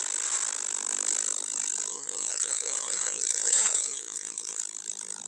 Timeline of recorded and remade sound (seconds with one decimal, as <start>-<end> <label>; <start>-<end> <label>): 0.0-1.9 recorded; 1.9-4.6 remade; 4.6-5.3 recorded